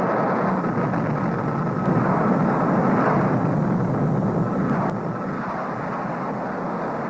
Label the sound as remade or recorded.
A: recorded